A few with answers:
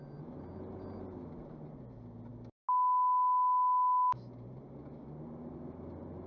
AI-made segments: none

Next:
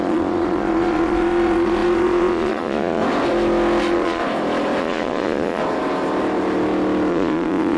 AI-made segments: 0.0-3.0 (vocoder, Vocos); 3.8-4.2; 4.8-5.6; 7.1-7.8

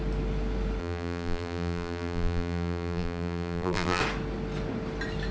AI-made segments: 0.8-4.0 (vocoder, BigVGAN v2)

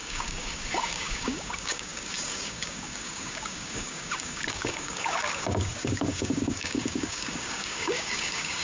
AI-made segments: 0.0-8.6 (codec, DAC)